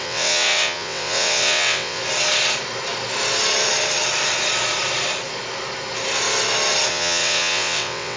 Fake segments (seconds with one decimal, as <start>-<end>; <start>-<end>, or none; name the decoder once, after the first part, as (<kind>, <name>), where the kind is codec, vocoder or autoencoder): 0.0-2.0 (vocoder, WaveNeXt); 6.9-8.2